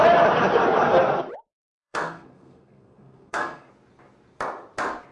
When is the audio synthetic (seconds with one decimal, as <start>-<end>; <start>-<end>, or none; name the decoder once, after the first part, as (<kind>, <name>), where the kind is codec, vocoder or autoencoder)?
1.5-3.7 (codec, SNAC)